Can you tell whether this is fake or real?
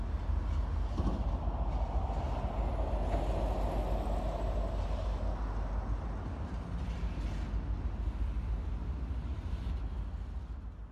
real